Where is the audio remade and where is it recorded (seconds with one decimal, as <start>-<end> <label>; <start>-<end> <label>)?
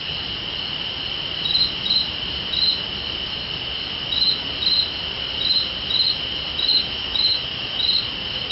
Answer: 0.0-6.7 recorded; 6.7-7.8 remade; 7.8-8.5 recorded